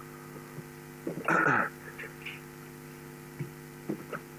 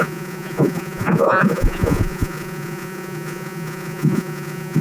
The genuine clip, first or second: first